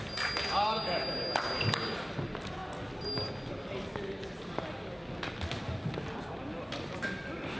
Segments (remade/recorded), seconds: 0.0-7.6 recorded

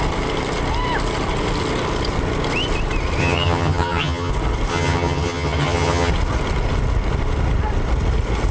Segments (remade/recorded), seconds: 0.0-3.2 recorded; 3.2-4.3 remade; 4.3-4.7 recorded; 4.7-6.1 remade; 6.1-8.5 recorded

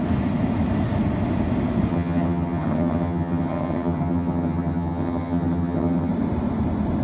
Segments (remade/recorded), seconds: 0.0-1.9 recorded; 1.9-6.1 remade; 6.1-7.0 recorded

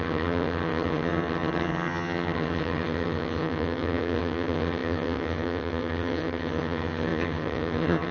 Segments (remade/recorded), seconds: 0.0-8.1 remade

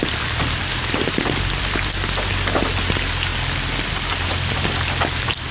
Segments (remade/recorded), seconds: 0.0-5.5 recorded

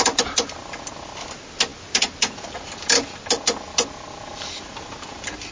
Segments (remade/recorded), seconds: 0.0-5.5 recorded